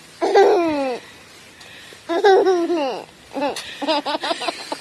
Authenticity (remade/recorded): recorded